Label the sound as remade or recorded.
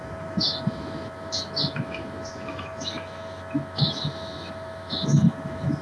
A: remade